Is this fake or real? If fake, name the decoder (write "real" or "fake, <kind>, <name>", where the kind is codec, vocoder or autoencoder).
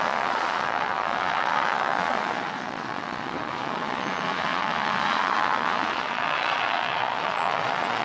fake, vocoder, Vocos